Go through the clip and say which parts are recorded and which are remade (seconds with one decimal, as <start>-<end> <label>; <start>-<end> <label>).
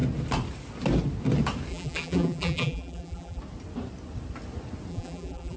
0.0-1.7 recorded; 1.7-3.4 remade; 3.4-4.9 recorded; 4.9-5.6 remade